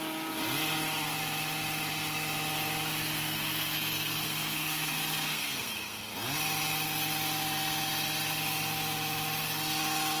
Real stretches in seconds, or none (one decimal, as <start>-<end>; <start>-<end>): 0.0-3.2; 6.0-10.2